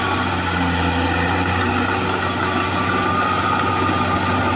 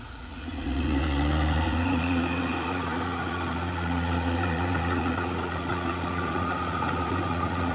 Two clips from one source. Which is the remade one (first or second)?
second